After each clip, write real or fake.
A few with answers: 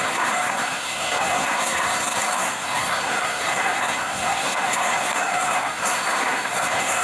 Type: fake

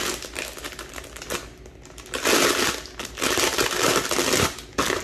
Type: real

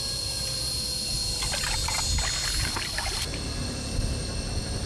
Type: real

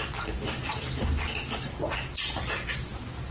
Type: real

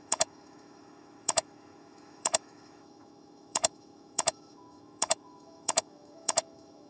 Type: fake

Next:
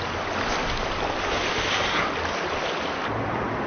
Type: real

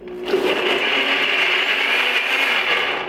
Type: real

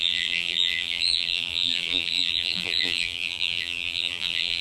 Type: fake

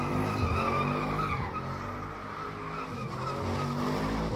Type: real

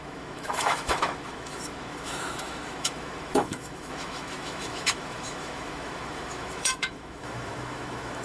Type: fake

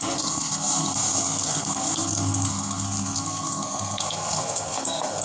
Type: fake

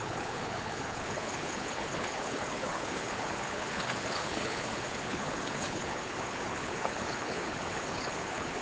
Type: fake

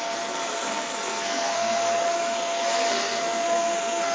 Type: fake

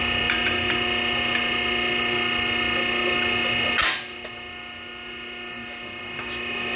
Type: real